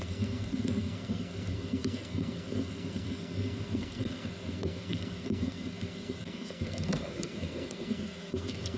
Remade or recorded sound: remade